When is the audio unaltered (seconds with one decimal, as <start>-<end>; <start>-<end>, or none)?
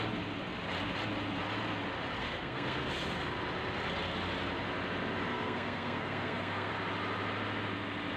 0.0-2.2; 2.9-5.3; 6.7-8.2